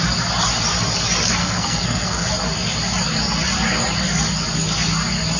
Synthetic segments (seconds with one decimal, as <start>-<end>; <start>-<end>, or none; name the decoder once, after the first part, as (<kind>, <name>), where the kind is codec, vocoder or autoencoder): 1.4-2.3 (codec, SNAC)